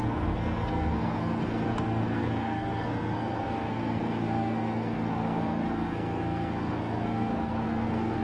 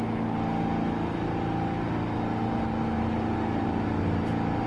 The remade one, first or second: first